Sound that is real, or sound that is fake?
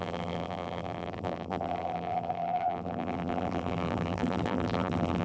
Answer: fake